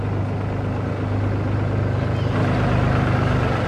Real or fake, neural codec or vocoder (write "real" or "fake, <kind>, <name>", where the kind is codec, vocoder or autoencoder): real